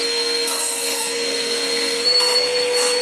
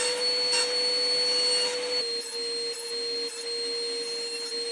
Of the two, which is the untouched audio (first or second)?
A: second